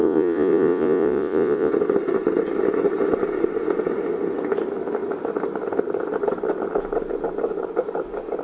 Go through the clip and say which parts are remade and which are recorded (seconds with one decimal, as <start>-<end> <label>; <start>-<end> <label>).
0.0-1.7 remade; 1.7-8.4 recorded